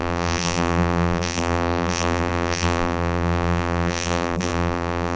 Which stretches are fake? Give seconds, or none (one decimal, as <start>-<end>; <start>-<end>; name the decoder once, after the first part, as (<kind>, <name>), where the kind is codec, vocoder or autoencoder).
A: 0.0-5.2 (vocoder, BigVGAN v2)